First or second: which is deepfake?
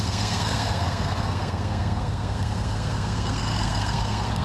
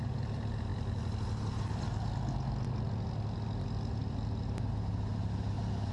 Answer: first